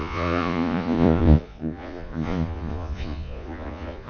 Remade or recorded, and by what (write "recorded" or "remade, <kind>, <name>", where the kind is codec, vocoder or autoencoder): remade, vocoder, Vocos